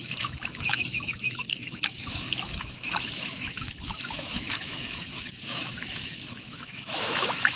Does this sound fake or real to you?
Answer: fake